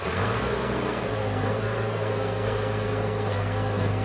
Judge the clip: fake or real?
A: fake